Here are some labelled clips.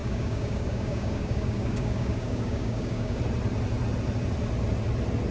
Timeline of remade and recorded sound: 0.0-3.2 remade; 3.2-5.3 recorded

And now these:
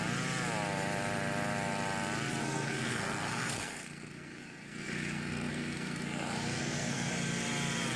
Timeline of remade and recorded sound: 0.0-2.4 recorded; 2.4-7.1 remade; 7.1-8.0 recorded

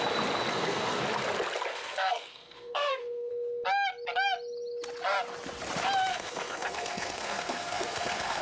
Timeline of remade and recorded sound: 0.0-0.5 recorded; 0.5-1.0 remade; 1.0-1.7 recorded; 1.7-3.3 remade; 3.3-6.1 recorded; 6.1-8.4 remade

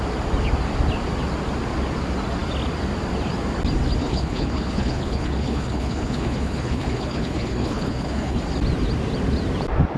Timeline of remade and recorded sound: 0.0-4.0 recorded; 4.0-8.4 remade; 8.4-10.0 recorded

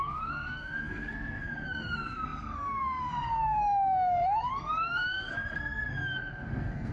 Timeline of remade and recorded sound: 0.0-6.9 remade

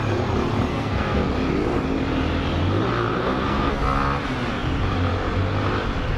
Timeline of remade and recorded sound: 0.0-0.7 recorded; 0.7-1.3 remade; 1.3-3.1 recorded; 3.1-3.7 remade; 3.7-6.2 recorded